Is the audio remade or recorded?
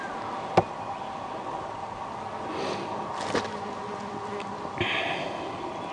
recorded